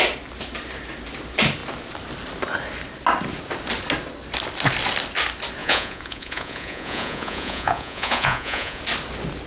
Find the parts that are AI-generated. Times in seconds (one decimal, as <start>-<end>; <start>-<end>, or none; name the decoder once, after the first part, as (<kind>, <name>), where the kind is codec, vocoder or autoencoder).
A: 5.6-8.8 (vocoder, Vocos)